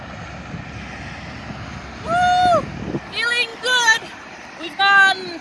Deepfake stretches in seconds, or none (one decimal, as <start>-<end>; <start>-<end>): 3.5-4.8